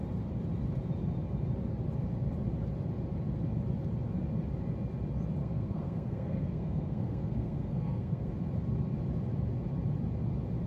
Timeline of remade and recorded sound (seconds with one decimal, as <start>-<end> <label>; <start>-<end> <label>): 0.0-5.4 recorded; 5.4-8.3 remade; 8.3-10.7 recorded